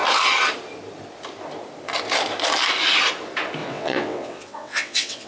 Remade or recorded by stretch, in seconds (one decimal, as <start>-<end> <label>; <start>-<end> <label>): 0.0-3.6 recorded; 3.6-5.3 remade